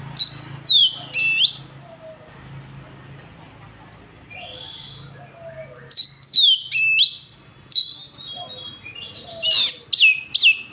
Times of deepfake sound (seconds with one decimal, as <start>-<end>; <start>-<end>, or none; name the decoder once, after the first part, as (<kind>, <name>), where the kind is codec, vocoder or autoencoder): none